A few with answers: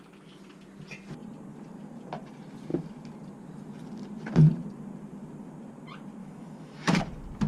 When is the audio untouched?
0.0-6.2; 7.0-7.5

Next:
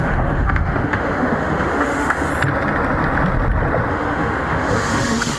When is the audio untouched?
2.3-3.9

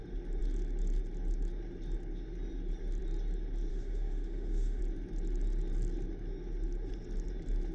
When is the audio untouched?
0.0-3.7; 4.8-7.7

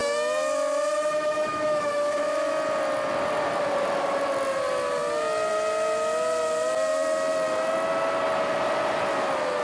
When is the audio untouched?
2.5-9.6